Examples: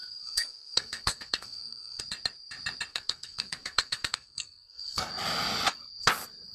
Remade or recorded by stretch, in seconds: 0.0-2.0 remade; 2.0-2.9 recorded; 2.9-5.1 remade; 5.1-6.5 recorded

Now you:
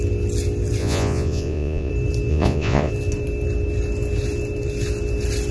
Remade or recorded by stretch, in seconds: 0.0-0.8 recorded; 0.8-1.9 remade; 1.9-2.3 recorded; 2.3-2.9 remade; 2.9-5.5 recorded

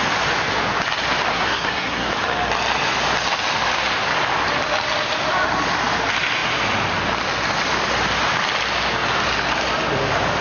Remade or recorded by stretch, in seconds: 0.0-1.3 recorded; 1.3-2.1 remade; 2.1-10.4 recorded

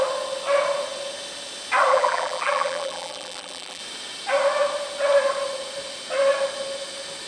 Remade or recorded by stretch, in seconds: 0.0-1.9 recorded; 1.9-3.8 remade; 3.8-7.3 recorded

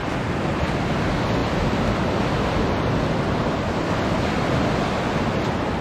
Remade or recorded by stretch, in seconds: 0.0-5.8 recorded